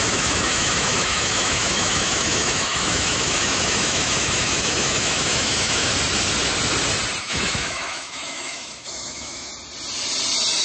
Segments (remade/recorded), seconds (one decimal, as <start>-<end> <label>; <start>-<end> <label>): 0.0-5.9 remade; 5.9-7.2 recorded; 7.2-9.5 remade; 9.5-10.6 recorded